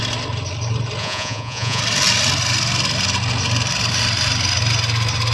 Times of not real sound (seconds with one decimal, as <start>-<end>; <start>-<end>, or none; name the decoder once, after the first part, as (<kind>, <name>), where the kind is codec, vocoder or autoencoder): 1.0-1.8 (vocoder, Vocos)